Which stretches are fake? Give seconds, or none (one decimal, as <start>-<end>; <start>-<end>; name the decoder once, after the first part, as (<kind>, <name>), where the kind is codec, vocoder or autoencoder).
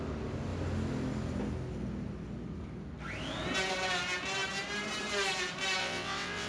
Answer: 5.8-6.5 (vocoder, WaveNeXt)